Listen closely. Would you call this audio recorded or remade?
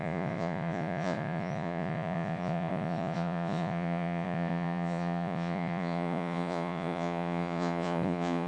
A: remade